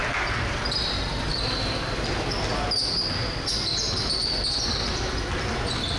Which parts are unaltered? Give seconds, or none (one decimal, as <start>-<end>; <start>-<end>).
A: 0.9-1.3; 2.1-4.2